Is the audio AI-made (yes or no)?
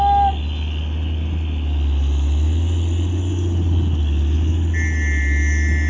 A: no